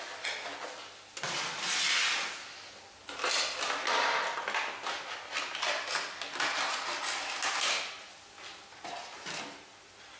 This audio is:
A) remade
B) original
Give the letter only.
B